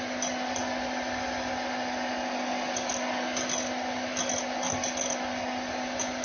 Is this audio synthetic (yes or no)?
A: no